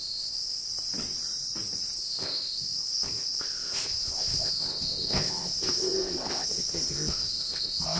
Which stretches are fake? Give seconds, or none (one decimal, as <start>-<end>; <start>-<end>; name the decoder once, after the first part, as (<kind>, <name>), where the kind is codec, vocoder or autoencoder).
0.0-0.7 (codec, ZipCodec); 2.0-8.0